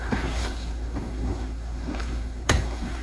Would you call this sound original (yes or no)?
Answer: no